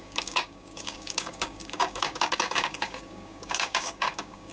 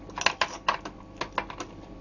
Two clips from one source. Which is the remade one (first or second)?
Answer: first